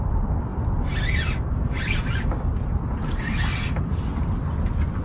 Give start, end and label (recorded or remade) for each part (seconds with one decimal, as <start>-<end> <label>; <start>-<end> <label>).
0.0-5.0 remade